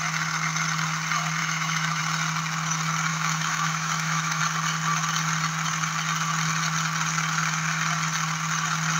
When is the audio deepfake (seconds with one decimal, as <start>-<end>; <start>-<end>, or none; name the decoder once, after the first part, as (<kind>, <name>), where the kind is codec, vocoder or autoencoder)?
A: 1.4-2.0 (autoencoder, DAC-VAE); 3.1-4.4